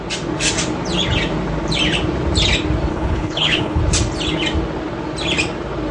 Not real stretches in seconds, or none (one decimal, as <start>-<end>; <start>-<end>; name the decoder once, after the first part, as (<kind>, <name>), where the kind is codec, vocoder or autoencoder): 2.9-3.8 (codec, HILCodec)